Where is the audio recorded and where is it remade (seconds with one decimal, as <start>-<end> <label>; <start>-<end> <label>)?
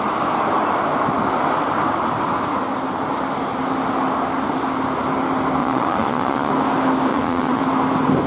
0.0-5.6 recorded; 5.6-6.5 remade; 6.5-7.1 recorded; 7.1-7.6 remade; 7.6-8.3 recorded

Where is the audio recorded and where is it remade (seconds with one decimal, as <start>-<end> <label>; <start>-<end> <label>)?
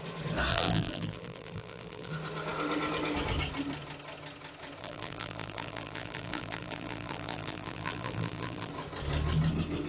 0.0-0.5 recorded; 0.5-2.1 remade; 2.1-4.8 recorded; 4.8-8.7 remade; 8.7-9.9 recorded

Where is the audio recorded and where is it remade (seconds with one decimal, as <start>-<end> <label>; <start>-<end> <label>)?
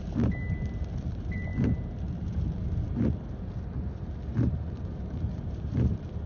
0.0-0.4 remade; 0.4-1.1 recorded; 1.1-1.5 remade; 1.5-4.3 recorded; 4.3-6.3 remade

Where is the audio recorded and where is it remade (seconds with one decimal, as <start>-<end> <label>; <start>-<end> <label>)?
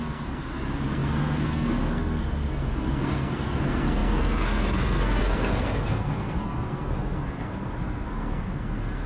0.0-9.1 remade